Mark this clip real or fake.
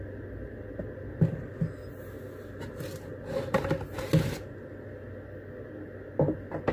real